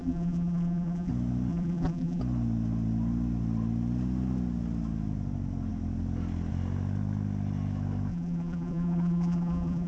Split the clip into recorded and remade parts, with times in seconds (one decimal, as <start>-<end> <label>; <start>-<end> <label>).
0.0-1.1 remade; 1.1-1.5 recorded; 1.5-2.2 remade; 2.2-8.1 recorded; 8.1-9.9 remade